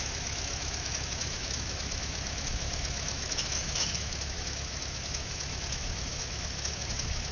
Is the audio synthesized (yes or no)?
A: yes